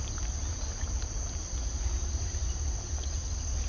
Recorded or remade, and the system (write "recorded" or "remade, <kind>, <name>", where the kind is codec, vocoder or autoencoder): recorded